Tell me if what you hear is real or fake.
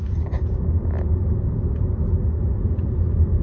real